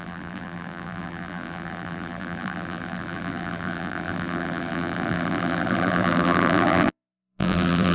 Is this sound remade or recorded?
remade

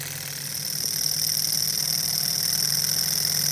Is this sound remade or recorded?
recorded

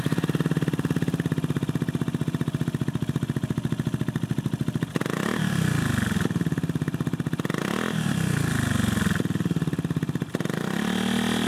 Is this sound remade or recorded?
recorded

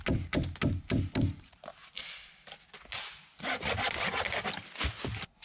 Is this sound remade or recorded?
recorded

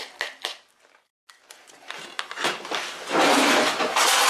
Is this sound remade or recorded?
recorded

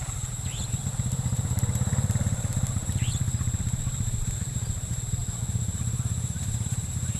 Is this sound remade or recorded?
remade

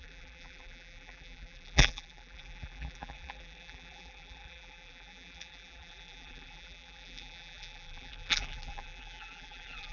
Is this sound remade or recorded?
remade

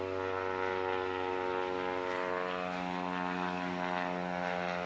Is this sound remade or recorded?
recorded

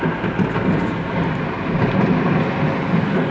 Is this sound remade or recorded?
recorded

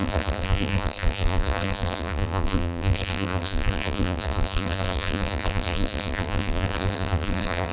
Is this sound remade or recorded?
remade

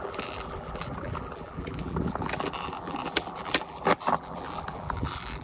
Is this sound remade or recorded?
remade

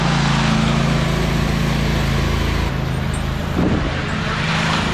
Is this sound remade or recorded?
recorded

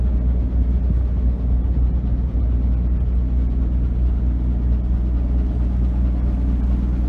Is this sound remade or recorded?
recorded